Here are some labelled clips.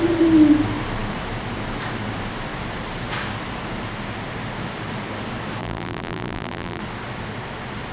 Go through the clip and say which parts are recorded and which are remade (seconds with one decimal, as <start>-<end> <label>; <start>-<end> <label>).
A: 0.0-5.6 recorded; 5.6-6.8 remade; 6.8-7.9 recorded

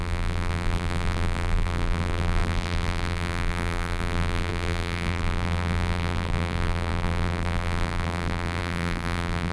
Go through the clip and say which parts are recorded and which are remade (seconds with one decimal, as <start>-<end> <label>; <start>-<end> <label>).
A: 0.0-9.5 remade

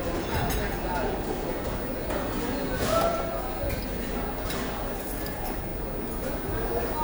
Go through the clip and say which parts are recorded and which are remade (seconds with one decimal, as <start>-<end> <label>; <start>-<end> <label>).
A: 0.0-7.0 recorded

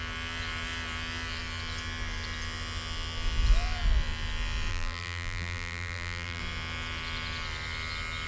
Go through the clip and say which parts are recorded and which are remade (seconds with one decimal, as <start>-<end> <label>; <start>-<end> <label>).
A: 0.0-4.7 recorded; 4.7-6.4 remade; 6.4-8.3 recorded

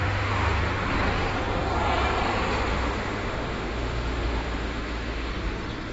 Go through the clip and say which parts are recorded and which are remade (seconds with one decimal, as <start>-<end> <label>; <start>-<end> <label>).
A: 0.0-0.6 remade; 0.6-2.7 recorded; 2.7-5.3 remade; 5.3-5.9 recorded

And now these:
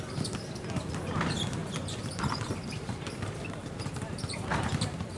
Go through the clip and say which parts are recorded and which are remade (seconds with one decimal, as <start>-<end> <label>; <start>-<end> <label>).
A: 0.0-1.6 recorded; 1.6-4.7 remade; 4.7-5.2 recorded